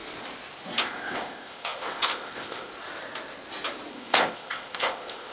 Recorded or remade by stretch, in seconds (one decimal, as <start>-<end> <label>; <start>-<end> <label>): 0.0-0.8 recorded; 0.8-2.7 remade; 2.7-3.9 recorded; 3.9-5.3 remade